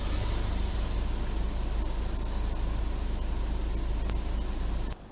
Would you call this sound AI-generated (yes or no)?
no